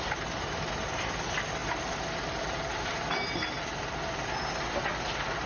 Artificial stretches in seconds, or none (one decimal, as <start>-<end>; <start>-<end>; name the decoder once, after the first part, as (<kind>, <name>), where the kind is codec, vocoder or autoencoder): none

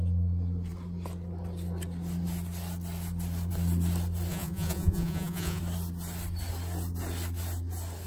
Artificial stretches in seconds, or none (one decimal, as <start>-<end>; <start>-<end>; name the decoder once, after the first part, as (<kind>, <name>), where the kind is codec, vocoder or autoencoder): 4.3-5.6 (vocoder, Vocos)

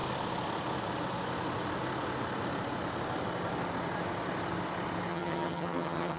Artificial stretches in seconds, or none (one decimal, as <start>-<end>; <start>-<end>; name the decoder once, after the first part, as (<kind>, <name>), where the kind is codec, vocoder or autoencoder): 5.1-6.2 (vocoder, HiFi-GAN)